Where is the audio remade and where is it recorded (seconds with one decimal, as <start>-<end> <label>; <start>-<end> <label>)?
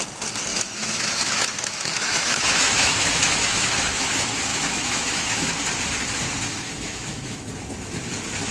0.0-0.5 recorded; 0.5-4.1 remade; 4.1-4.5 recorded; 4.5-5.5 remade; 5.5-6.5 recorded; 6.5-7.5 remade; 7.5-8.5 recorded